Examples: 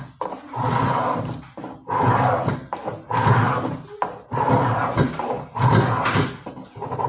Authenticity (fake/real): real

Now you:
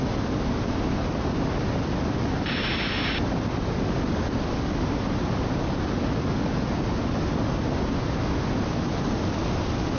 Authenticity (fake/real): real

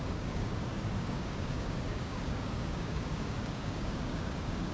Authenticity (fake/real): fake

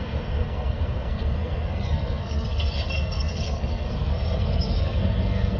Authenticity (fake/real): fake